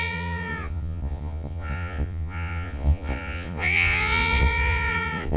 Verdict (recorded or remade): remade